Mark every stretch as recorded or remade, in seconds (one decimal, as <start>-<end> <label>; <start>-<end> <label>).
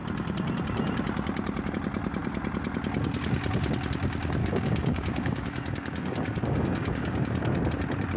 0.0-4.4 recorded; 4.4-7.7 remade; 7.7-8.2 recorded